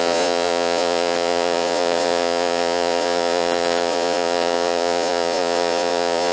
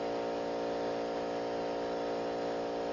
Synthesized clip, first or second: first